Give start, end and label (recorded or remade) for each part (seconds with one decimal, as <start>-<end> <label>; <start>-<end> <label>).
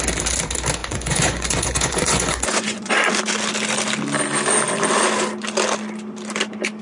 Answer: 0.0-0.8 recorded; 0.8-2.9 remade; 2.9-6.8 recorded